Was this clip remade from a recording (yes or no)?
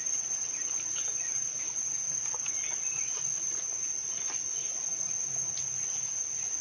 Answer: no